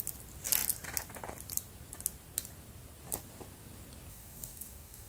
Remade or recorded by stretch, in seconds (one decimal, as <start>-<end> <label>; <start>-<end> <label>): 0.0-4.1 recorded; 4.1-5.1 remade